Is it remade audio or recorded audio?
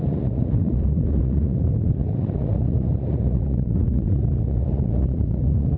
remade